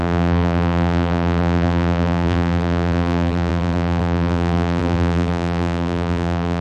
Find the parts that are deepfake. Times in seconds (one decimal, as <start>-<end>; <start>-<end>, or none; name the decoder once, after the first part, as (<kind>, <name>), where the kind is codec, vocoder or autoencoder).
0.0-6.6 (vocoder, BigVGAN v2)